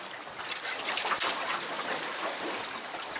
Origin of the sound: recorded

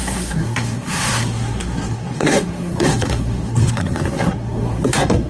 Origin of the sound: remade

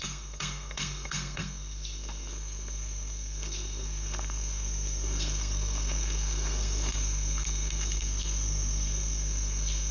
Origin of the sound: remade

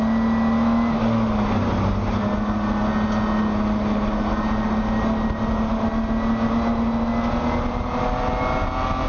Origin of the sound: recorded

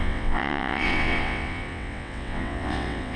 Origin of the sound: remade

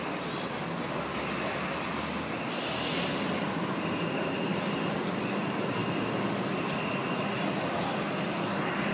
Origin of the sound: recorded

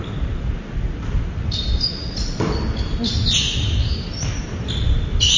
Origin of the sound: recorded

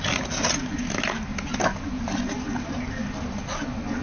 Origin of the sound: recorded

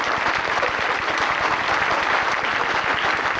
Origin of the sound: recorded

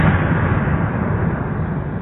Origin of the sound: recorded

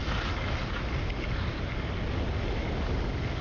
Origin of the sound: recorded